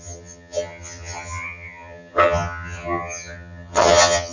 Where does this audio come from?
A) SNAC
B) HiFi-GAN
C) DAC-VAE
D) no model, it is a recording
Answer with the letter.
B